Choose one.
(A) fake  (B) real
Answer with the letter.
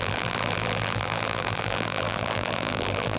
A